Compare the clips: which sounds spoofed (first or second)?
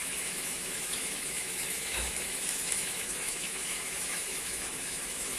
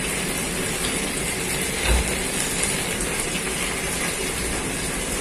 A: first